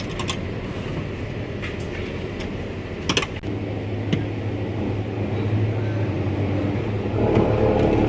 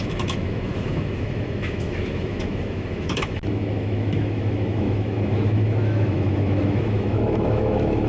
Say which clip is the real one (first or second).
first